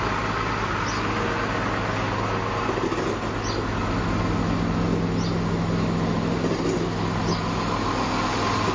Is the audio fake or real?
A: real